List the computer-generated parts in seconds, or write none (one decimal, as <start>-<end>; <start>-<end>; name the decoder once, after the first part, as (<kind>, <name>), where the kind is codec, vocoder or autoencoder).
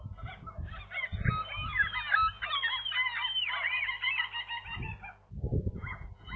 5.5-6.4 (vocoder, Vocos)